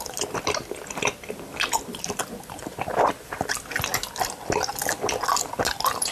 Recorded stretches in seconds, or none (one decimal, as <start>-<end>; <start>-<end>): 0.0-6.1